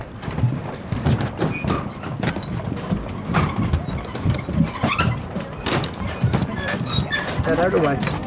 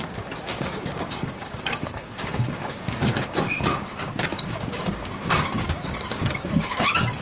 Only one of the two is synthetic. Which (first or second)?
second